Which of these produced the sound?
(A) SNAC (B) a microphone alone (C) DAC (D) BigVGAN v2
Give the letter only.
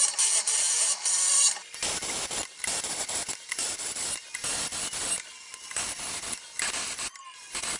B